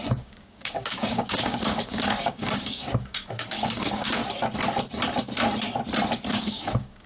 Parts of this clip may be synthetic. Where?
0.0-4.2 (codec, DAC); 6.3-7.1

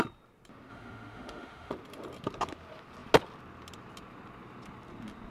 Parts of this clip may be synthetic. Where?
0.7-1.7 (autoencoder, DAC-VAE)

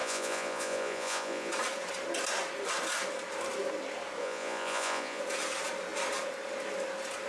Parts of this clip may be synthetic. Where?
0.0-1.5 (vocoder, Vocos); 4.2-5.2

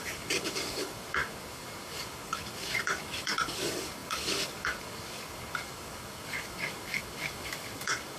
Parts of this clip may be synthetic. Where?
0.0-8.2 (codec, DAC)

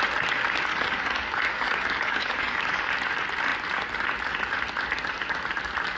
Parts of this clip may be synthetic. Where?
0.7-2.9 (codec, DAC)